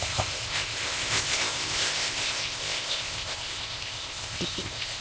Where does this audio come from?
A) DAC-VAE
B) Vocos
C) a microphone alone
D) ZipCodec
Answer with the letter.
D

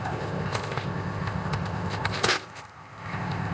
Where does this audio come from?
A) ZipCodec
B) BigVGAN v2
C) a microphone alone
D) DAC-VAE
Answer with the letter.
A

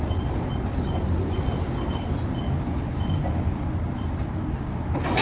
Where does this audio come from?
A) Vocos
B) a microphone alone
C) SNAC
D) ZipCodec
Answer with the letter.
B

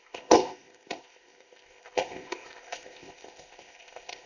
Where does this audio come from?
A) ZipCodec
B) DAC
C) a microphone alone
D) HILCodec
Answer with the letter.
A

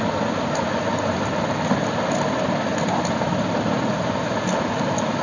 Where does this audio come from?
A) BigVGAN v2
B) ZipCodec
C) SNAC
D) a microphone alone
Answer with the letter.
D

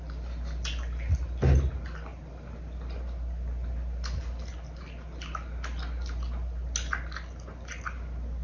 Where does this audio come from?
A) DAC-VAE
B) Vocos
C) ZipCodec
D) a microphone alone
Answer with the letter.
D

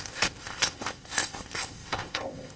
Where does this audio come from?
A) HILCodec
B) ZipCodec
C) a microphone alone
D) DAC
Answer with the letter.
B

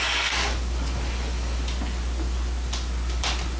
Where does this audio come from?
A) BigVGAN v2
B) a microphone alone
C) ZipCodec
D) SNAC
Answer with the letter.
B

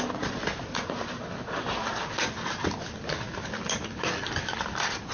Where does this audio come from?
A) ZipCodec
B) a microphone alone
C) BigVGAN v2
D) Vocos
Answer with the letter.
B